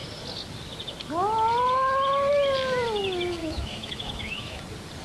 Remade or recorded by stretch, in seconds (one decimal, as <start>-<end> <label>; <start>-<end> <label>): 0.0-3.4 recorded; 3.4-4.6 remade; 4.6-5.0 recorded